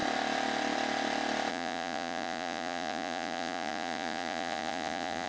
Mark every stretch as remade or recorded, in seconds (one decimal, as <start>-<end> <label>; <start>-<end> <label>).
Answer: 0.0-1.5 recorded; 1.5-5.3 remade